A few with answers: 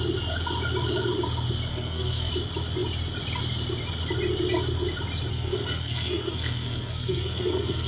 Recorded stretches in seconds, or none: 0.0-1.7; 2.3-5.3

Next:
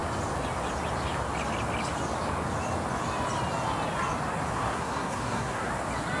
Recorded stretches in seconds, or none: 0.0-4.5; 5.7-6.2

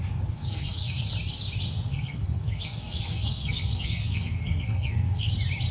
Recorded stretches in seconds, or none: 0.0-0.4; 1.1-1.9; 5.3-5.7

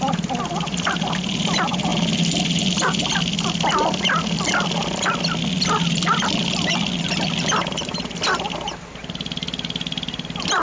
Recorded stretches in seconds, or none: 0.0-10.6

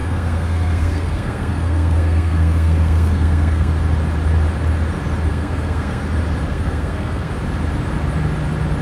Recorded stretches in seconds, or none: 3.7-5.3; 6.0-6.5; 7.3-8.8